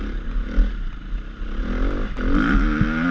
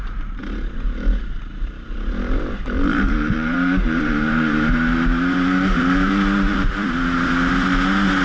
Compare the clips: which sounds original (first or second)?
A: first